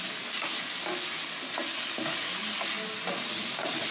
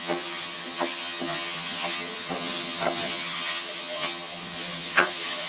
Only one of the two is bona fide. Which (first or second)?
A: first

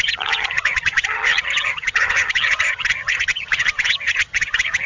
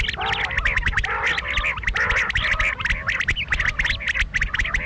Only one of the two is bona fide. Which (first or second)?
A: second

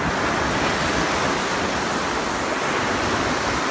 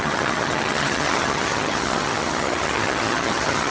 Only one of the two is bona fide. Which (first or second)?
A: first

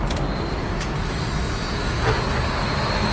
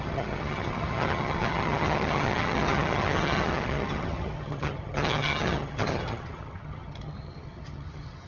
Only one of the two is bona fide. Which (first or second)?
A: first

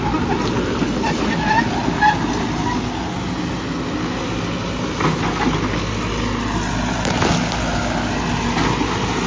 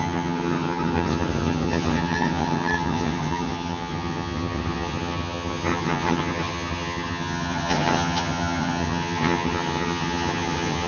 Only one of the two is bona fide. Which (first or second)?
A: first